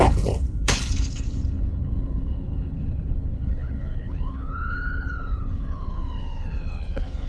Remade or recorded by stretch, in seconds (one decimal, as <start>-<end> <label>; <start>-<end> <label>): 0.0-7.3 remade